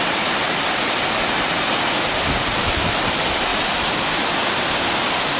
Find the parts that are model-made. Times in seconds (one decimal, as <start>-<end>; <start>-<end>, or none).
none